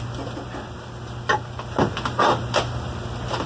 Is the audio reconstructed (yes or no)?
no